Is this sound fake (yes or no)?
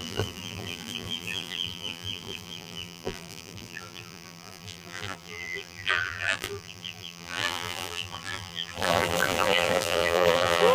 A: yes